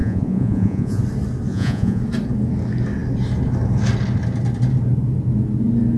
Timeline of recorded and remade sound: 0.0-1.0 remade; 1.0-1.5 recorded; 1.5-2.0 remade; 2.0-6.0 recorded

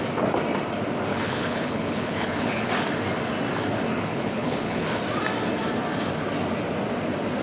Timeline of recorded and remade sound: 0.0-1.1 recorded; 1.1-2.7 remade; 2.7-3.9 recorded; 3.9-5.0 remade; 5.0-7.4 recorded

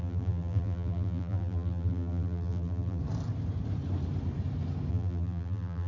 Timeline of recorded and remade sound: 0.0-3.0 remade; 3.0-4.9 recorded; 4.9-5.9 remade